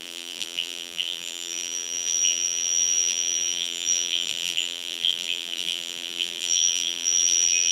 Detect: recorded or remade remade